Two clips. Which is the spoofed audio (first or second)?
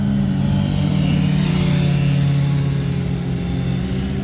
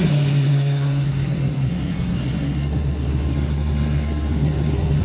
second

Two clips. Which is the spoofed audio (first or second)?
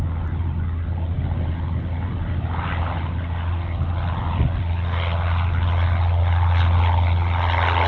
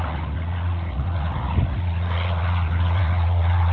second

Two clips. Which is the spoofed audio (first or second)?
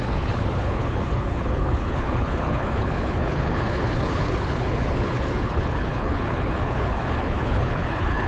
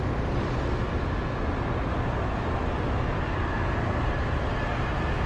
first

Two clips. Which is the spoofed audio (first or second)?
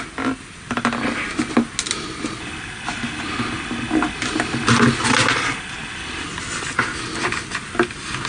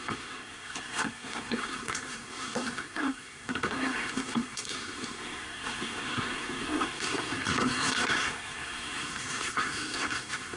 second